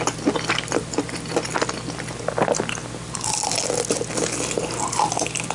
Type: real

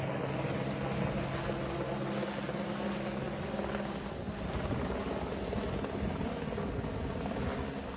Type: real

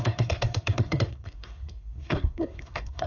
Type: fake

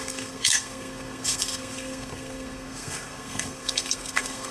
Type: fake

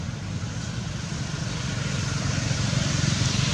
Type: fake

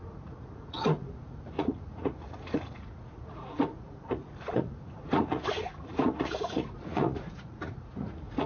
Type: fake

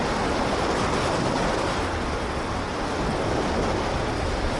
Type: real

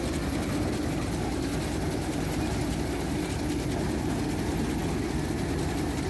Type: real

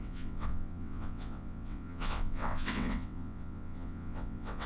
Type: fake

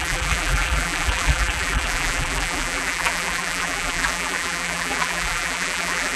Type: fake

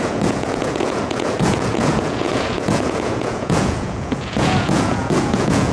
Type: fake